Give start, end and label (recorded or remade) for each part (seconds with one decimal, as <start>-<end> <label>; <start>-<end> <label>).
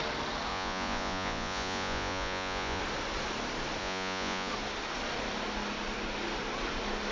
0.0-0.5 recorded; 0.5-2.8 remade; 2.8-3.8 recorded; 3.8-4.5 remade; 4.5-7.1 recorded